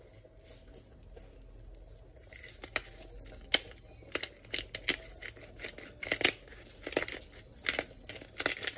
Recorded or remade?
recorded